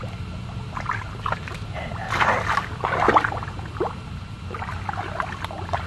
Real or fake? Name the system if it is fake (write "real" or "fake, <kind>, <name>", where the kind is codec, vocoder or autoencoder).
real